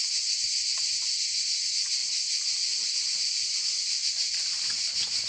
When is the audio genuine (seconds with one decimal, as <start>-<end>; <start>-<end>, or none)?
0.0-5.3